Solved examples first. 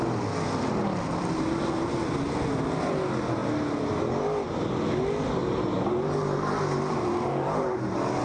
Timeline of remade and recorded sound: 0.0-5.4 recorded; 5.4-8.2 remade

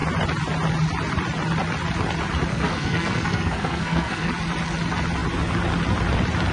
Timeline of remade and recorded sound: 0.0-2.5 recorded; 2.5-4.3 remade; 4.3-6.5 recorded

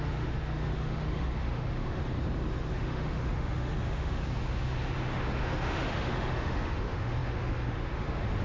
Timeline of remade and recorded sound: 0.0-2.0 remade; 2.0-2.7 recorded; 2.7-4.2 remade; 4.2-5.1 recorded; 5.1-8.4 remade